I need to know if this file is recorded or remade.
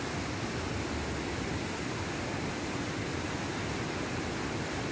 recorded